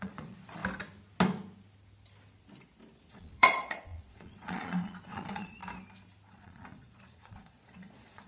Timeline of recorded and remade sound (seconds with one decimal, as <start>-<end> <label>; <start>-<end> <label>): 0.0-0.6 remade; 0.6-3.1 recorded; 3.1-5.6 remade; 5.6-6.3 recorded; 6.3-8.3 remade

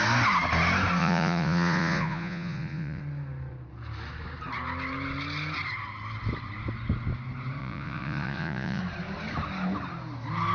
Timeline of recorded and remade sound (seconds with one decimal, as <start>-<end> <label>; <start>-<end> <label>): 0.0-1.0 recorded; 1.0-3.0 remade; 3.0-7.6 recorded; 7.6-8.8 remade; 8.8-10.5 recorded

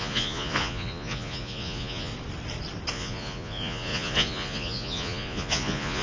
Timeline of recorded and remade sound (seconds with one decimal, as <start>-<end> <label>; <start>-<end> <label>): 0.0-2.1 remade; 2.1-2.9 recorded; 2.9-6.0 remade

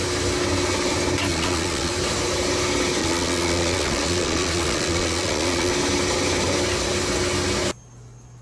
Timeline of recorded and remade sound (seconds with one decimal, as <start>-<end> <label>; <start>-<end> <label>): 0.0-1.3 recorded; 1.3-1.9 remade; 1.9-3.0 recorded; 3.0-5.7 remade; 5.7-8.4 recorded